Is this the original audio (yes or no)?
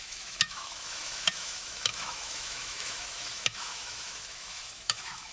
no